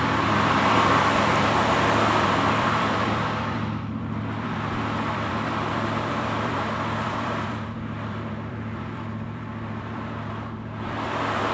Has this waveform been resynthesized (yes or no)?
yes